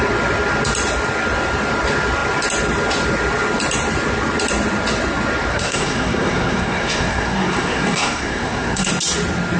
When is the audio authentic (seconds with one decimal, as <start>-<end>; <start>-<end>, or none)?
0.0-5.5; 8.9-9.6